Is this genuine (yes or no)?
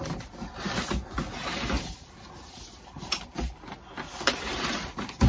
yes